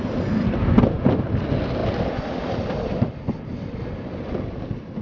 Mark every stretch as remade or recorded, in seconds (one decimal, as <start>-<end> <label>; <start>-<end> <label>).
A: 0.0-1.8 recorded; 1.8-4.2 remade; 4.2-5.0 recorded